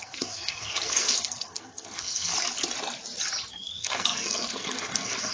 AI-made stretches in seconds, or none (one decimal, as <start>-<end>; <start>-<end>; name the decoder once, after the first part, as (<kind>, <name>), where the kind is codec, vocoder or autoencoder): 0.0-2.3 (codec, SNAC); 3.5-5.3